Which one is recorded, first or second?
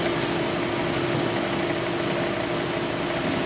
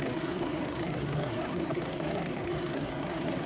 first